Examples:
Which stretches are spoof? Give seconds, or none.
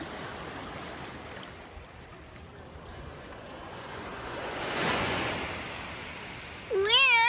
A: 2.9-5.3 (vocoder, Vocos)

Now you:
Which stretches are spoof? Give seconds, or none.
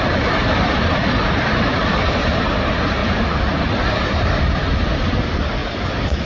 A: 0.0-5.6 (vocoder, BigVGAN v2)